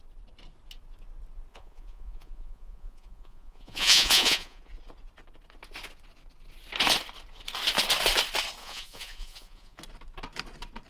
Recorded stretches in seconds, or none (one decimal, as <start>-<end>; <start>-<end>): 0.0-1.5; 4.7-8.6; 9.8-10.9

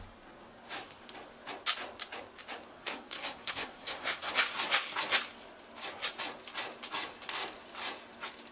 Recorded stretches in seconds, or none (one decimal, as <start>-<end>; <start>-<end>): 0.0-2.7; 4.3-8.5

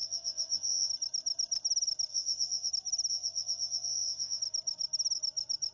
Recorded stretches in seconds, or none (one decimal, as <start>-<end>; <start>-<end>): 0.9-2.1; 2.7-3.1; 4.4-5.7

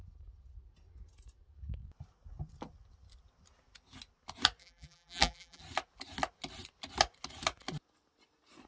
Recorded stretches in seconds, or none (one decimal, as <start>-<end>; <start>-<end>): 0.0-4.6; 5.6-8.7

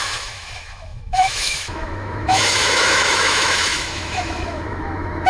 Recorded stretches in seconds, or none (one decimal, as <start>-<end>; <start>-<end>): none

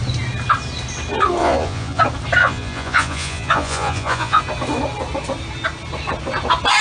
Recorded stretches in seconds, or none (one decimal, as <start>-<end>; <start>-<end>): 0.0-1.4; 2.0-2.4; 4.4-6.8

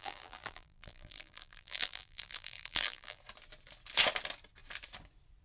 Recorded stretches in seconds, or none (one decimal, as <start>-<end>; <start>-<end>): 3.2-5.4

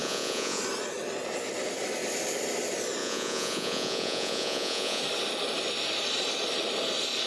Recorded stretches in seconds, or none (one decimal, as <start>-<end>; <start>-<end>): 0.6-3.0; 5.0-7.3